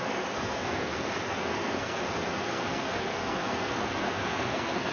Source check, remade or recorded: remade